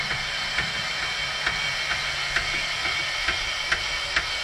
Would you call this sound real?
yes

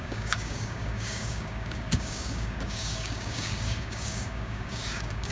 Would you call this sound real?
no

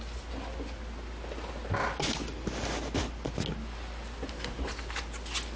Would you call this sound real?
yes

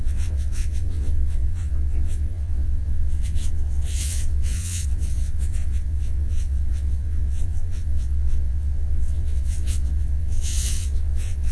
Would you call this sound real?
no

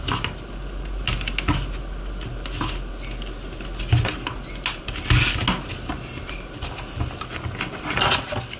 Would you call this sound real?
yes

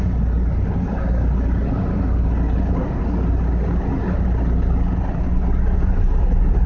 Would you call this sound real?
yes